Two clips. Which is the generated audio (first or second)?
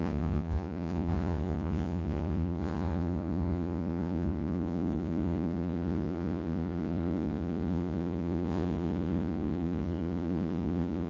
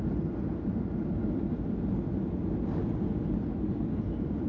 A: first